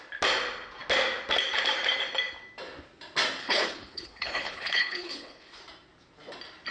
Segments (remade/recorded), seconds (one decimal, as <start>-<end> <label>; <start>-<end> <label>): 0.0-3.4 recorded; 3.4-5.6 remade; 5.6-6.7 recorded